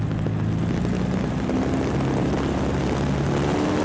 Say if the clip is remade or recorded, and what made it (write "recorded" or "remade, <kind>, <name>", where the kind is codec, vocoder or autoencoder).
recorded